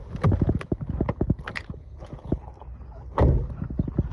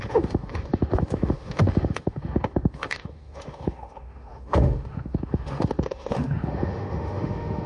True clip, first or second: first